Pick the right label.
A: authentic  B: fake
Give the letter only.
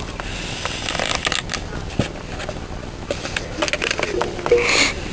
A